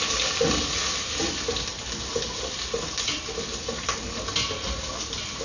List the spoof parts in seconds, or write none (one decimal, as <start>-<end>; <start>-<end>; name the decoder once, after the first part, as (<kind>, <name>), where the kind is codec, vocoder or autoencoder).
none